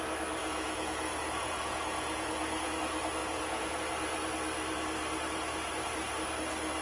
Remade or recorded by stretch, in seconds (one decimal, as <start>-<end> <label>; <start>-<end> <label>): 0.0-0.4 recorded; 0.4-2.8 remade; 2.8-3.2 recorded; 3.2-3.8 remade; 3.8-6.8 recorded